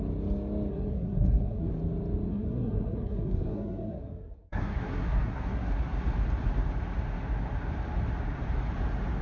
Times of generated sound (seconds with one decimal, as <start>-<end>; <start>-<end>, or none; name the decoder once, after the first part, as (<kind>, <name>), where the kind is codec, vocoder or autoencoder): 0.7-1.7 (codec, SNAC); 2.3-5.7